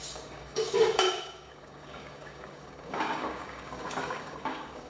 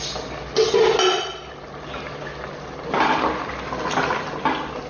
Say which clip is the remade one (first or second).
first